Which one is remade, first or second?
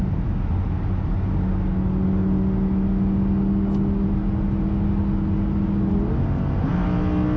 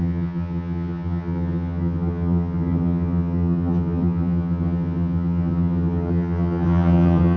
second